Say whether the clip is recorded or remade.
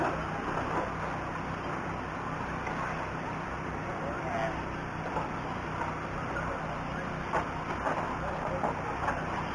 recorded